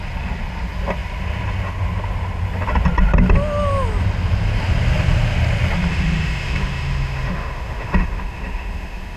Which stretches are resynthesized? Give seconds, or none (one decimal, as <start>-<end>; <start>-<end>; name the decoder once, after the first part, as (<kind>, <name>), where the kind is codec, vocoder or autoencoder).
5.9-9.2 (autoencoder, DAC-VAE)

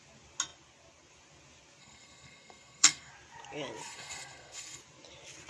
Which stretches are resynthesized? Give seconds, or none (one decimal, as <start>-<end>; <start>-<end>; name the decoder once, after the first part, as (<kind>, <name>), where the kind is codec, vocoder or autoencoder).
1.8-3.1 (codec, SNAC); 3.8-4.8

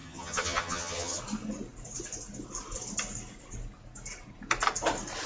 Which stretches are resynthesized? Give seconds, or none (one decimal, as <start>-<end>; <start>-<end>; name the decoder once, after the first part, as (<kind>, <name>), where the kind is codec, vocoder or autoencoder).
0.0-1.2 (vocoder, HiFi-GAN)

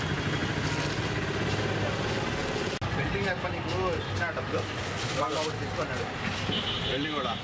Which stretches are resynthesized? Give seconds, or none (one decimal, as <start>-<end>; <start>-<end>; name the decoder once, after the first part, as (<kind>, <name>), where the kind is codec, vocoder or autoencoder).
none

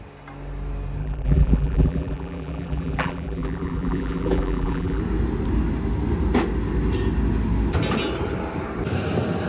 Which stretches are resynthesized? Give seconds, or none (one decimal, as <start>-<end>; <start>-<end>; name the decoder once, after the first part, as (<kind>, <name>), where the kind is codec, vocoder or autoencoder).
1.0-5.0 (vocoder, BigVGAN v2)

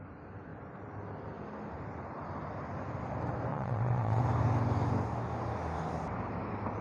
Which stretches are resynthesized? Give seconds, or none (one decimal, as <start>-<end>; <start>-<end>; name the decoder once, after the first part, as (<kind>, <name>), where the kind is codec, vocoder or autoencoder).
3.5-4.2 (vocoder, WaveNeXt)